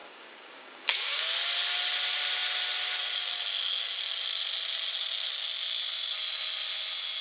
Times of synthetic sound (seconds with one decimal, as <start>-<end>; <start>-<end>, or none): 0.0-1.2